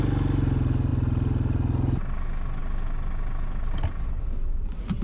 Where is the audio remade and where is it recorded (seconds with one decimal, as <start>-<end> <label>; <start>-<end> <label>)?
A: 0.0-5.0 recorded